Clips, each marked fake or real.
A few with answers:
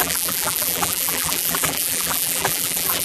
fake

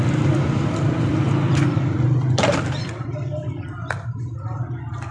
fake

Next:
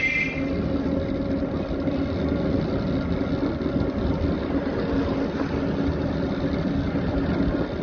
real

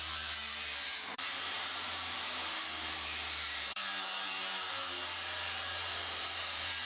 fake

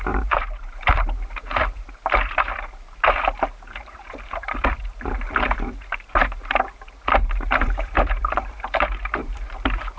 fake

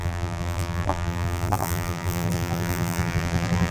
fake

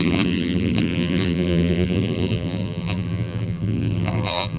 fake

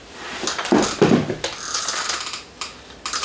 real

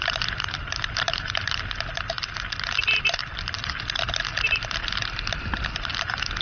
real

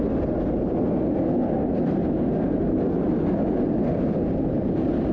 real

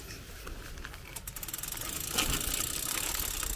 real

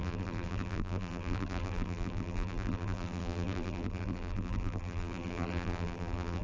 fake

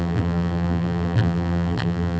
fake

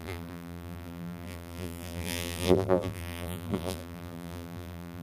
fake